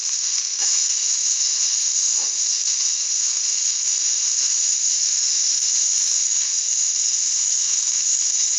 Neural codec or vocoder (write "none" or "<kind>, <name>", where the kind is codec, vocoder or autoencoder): autoencoder, DAC-VAE